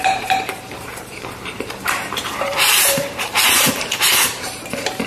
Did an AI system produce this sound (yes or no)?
yes